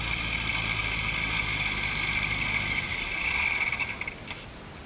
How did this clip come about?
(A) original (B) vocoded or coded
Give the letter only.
A